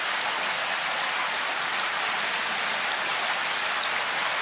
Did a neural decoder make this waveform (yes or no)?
no